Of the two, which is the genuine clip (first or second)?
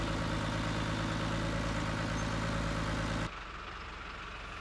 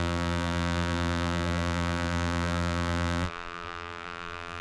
first